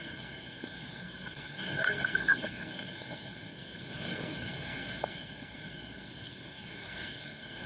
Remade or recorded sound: remade